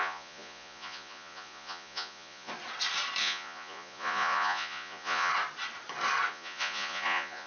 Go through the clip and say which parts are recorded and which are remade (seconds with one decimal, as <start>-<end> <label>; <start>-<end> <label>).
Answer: 0.0-2.5 remade; 2.5-3.2 recorded; 3.2-5.3 remade; 5.3-6.3 recorded; 6.3-7.5 remade